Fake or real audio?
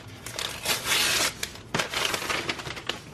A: real